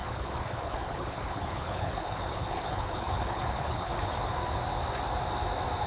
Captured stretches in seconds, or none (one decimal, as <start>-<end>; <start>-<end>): 3.9-5.9